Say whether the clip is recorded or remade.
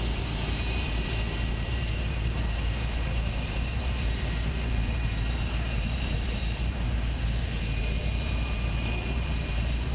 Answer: remade